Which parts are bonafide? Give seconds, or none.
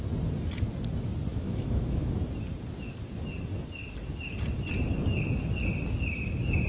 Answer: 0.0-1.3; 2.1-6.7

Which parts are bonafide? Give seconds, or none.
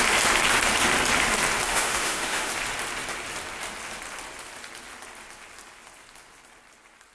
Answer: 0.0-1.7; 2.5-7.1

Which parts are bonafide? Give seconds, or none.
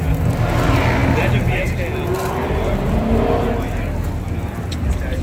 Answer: 0.0-5.2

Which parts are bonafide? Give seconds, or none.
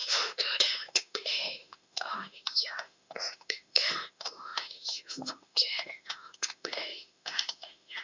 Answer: none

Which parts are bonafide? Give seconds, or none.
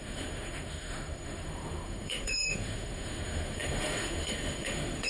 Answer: none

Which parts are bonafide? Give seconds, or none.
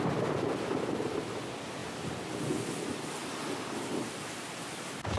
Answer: 0.0-5.2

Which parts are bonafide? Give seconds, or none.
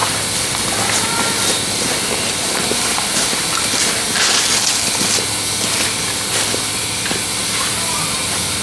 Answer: 0.0-8.6